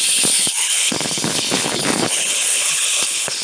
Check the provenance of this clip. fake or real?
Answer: fake